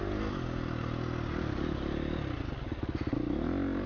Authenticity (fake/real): real